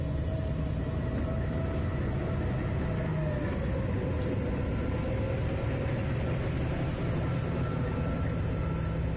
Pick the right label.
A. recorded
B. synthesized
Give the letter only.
A